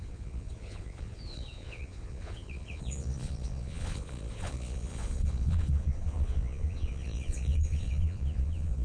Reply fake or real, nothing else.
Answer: fake